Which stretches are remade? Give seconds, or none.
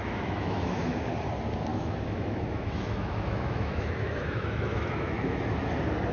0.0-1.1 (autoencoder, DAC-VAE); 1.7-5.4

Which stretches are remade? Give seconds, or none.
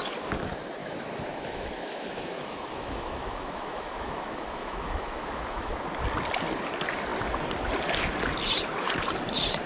0.8-5.7 (autoencoder, DAC-VAE)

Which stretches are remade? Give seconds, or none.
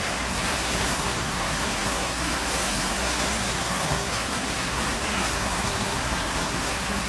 0.0-7.1 (codec, SNAC)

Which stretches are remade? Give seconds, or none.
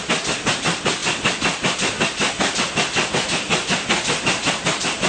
none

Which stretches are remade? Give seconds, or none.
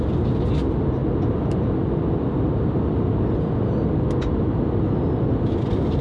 none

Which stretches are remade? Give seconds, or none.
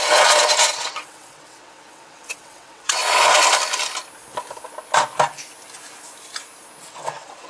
0.0-3.0 (vocoder, WaveNeXt); 6.8-7.5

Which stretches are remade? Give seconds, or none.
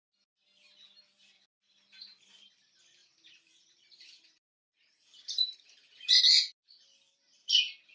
3.0-6.2 (vocoder, BigVGAN v2)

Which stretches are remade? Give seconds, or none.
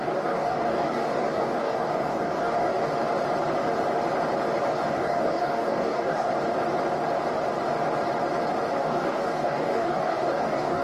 0.0-2.8 (codec, DAC); 4.9-6.3; 8.8-10.8